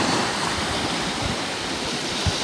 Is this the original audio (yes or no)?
no